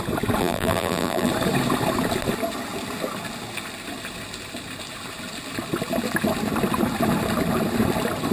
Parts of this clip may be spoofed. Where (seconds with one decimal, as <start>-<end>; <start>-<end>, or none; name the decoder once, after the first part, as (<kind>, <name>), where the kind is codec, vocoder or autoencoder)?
0.4-1.3 (vocoder, BigVGAN v2)

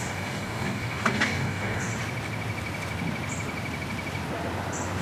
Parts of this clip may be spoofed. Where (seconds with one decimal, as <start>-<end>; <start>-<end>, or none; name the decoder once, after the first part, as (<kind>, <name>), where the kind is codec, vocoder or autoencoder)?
0.0-1.9 (codec, DAC)

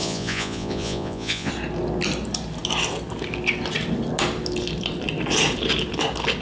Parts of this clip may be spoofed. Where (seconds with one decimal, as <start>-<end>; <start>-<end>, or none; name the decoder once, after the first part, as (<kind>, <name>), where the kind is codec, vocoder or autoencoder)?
0.0-1.5 (vocoder, Vocos)